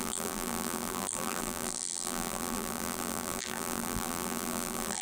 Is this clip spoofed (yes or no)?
yes